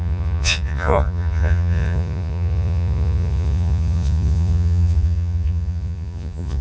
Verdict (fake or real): fake